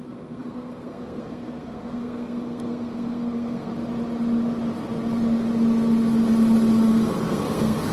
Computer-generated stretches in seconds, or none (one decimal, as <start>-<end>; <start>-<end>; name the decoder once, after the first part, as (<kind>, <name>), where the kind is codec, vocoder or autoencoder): 0.0-3.7 (codec, SNAC); 6.9-7.9